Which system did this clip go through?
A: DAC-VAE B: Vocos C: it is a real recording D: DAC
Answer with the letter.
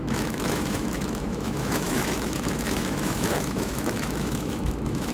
A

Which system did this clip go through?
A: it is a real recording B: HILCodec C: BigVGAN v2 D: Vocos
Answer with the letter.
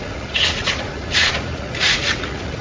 D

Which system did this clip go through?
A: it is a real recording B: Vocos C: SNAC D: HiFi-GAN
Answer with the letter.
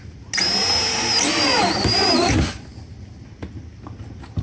A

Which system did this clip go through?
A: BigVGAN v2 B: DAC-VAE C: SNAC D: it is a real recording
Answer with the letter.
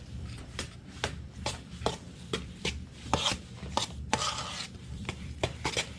A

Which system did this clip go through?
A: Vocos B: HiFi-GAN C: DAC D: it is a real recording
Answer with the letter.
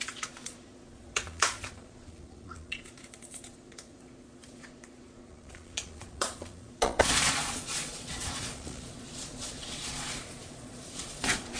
A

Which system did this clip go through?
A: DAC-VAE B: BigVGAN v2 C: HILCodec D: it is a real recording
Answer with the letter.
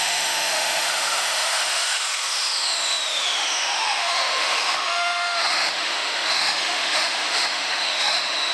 A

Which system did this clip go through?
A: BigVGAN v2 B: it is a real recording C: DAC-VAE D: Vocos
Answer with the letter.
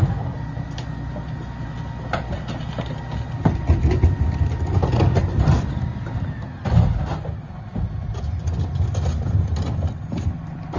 B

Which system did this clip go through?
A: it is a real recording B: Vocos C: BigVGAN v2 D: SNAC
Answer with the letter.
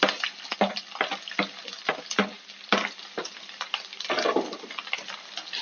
A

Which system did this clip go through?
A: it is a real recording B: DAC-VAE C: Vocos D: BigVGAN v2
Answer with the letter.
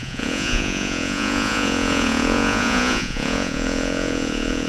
C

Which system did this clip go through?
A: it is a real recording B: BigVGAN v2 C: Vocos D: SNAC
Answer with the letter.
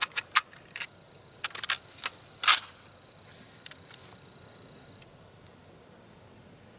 A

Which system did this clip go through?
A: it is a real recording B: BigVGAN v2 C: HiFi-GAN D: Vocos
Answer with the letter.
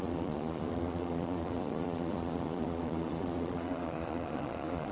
D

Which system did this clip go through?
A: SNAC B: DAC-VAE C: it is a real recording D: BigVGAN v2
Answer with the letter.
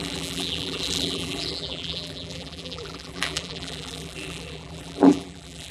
D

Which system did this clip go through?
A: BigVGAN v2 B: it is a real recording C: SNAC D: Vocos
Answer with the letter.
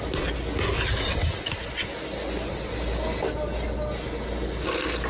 B